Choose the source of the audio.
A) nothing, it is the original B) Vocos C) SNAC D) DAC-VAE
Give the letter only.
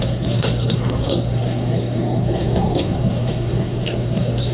C